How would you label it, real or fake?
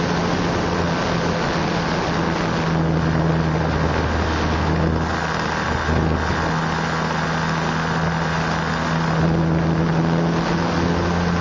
real